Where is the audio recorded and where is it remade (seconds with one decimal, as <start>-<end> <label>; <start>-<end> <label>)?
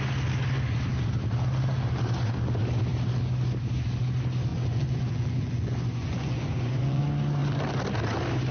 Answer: 0.0-4.5 recorded; 4.5-7.0 remade; 7.0-8.5 recorded